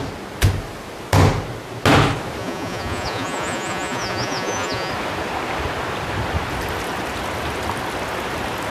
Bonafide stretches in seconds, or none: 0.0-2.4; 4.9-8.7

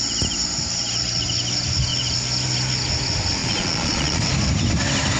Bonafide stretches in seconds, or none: 0.0-3.4; 4.2-5.2

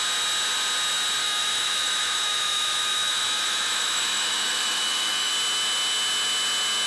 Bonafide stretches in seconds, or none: 0.0-1.2; 5.3-6.9

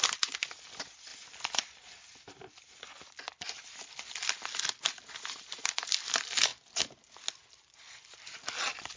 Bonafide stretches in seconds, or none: 0.0-9.0

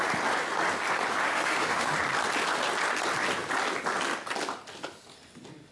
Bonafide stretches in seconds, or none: 0.0-1.2; 1.9-5.7

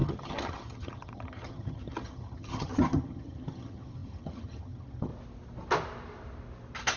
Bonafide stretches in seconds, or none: 5.1-7.0

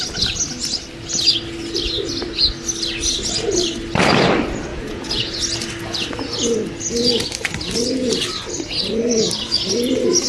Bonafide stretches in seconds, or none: 0.0-4.7; 5.4-10.3